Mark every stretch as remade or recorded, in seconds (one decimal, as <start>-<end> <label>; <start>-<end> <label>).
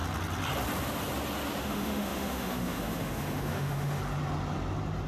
0.0-1.6 recorded; 1.6-4.0 remade; 4.0-5.1 recorded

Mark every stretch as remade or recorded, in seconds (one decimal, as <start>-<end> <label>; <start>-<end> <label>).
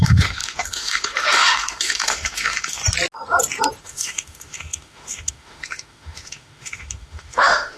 0.0-2.8 remade; 2.8-3.8 recorded; 3.8-7.8 remade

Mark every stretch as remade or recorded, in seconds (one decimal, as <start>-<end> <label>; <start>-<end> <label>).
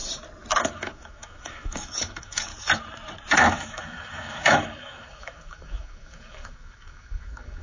0.0-0.6 recorded; 0.6-2.5 remade; 2.5-3.5 recorded; 3.5-7.6 remade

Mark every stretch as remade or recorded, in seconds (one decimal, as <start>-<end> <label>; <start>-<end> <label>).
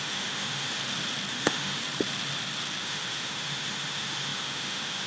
0.0-0.8 remade; 0.8-1.3 recorded; 1.3-1.8 remade; 1.8-2.8 recorded; 2.8-5.1 remade